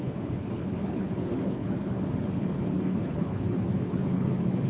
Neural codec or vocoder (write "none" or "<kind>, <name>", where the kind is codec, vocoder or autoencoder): codec, HILCodec